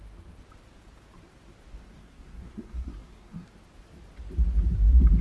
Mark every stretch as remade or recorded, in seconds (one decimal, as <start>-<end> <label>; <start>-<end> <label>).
0.0-1.8 recorded; 1.8-3.5 remade; 3.5-5.2 recorded